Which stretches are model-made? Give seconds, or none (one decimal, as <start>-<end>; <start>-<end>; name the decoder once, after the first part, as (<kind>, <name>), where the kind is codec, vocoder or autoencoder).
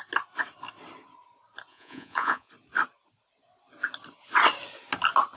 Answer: 1.7-2.5 (vocoder, Vocos)